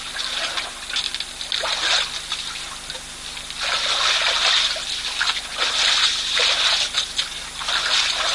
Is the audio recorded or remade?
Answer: recorded